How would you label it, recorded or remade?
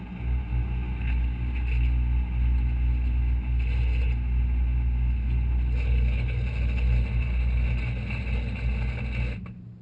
recorded